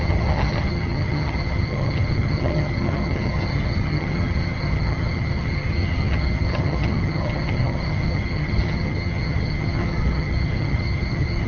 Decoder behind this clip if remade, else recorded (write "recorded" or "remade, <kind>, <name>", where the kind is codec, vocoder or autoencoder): remade, vocoder, HiFi-GAN